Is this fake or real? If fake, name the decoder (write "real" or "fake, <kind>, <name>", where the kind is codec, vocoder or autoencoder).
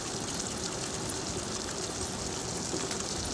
real